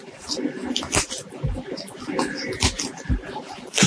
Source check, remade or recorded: recorded